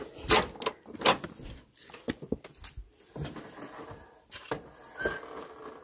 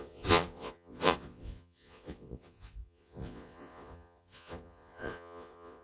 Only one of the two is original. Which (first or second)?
first